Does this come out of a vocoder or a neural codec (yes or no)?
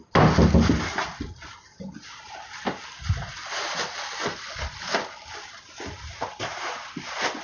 no